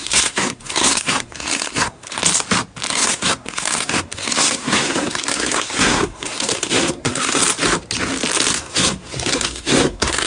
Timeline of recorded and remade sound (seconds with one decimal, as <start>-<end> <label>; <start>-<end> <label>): 0.0-2.2 remade; 2.2-2.9 recorded; 2.9-7.4 remade; 7.4-8.5 recorded; 8.5-10.3 remade